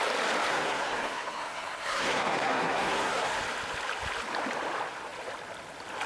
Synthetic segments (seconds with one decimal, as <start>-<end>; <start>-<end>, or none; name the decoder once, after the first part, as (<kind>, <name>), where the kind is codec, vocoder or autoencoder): 0.5-3.4 (codec, SNAC)